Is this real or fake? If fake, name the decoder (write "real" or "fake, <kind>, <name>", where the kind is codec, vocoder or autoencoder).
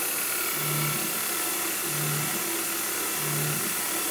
real